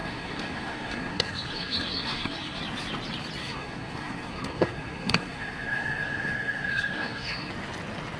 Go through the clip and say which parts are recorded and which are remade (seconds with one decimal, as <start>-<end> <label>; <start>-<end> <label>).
0.0-2.6 remade; 2.6-3.4 recorded; 3.4-7.5 remade; 7.5-8.2 recorded